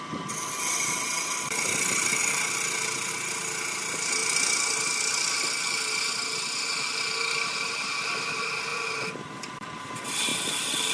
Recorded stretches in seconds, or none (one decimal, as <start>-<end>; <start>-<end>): 0.0-4.2; 6.1-8.7; 9.9-10.9